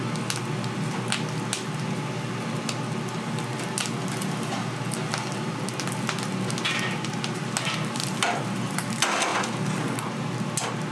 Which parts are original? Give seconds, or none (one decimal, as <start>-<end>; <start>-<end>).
0.0-10.9